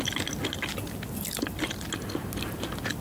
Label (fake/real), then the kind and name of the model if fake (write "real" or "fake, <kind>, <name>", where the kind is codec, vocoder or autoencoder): real